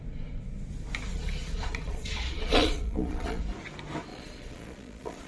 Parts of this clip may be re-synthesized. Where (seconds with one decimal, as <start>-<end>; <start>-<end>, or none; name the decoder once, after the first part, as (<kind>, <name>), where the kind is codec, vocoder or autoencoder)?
1.1-3.4 (vocoder, Vocos); 4.1-5.3